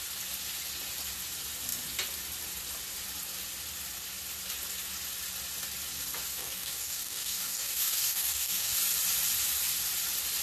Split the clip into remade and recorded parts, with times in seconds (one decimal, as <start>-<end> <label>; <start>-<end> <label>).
0.0-6.3 recorded; 6.3-8.8 remade; 8.8-10.4 recorded